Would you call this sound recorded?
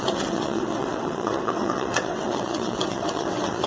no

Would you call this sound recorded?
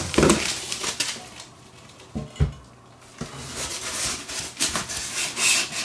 yes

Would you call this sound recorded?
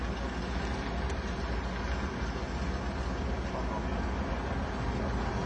yes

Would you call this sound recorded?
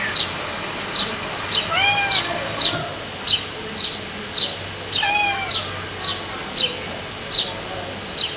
yes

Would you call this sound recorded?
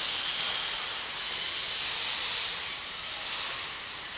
yes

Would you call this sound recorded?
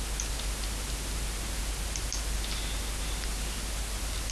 yes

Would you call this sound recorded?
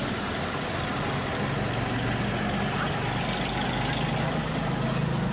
yes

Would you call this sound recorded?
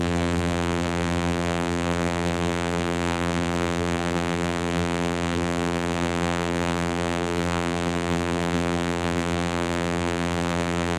no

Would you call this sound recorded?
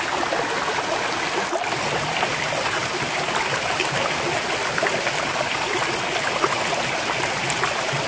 yes